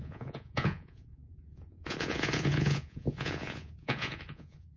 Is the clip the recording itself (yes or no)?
no